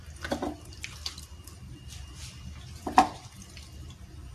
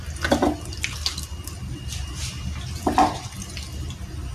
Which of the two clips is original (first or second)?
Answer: second